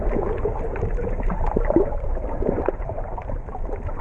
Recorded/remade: remade